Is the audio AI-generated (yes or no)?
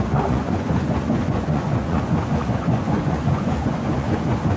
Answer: yes